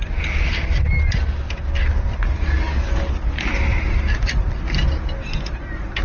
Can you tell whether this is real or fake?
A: real